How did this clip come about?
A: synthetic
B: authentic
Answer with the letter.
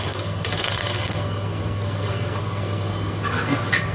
A